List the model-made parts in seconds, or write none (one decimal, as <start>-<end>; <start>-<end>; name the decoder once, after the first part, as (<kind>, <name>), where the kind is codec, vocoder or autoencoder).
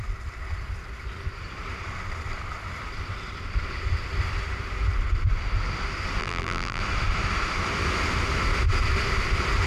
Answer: 6.2-6.8 (vocoder, BigVGAN v2)